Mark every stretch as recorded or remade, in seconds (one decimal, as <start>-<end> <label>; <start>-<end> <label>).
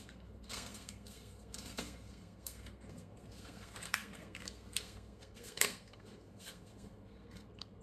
0.0-7.8 remade